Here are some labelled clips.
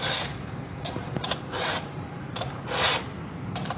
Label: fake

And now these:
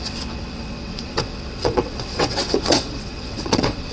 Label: fake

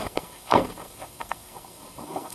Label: fake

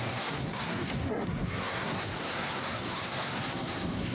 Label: fake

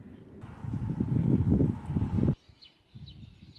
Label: real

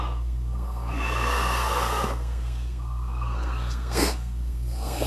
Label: fake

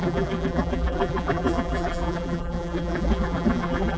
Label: fake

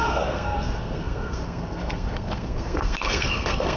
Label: fake